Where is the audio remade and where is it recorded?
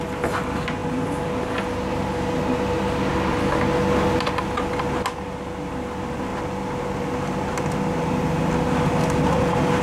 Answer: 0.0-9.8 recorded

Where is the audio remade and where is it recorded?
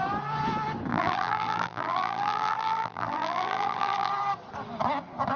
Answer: 0.0-0.9 recorded; 0.9-4.1 remade; 4.1-5.4 recorded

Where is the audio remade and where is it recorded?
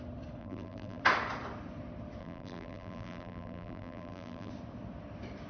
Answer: 0.0-0.4 recorded; 0.4-1.0 remade; 1.0-2.2 recorded; 2.2-4.5 remade; 4.5-5.5 recorded